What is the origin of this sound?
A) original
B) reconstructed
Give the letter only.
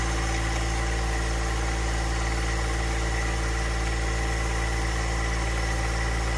A